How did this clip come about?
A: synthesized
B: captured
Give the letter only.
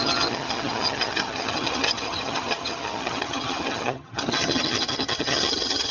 A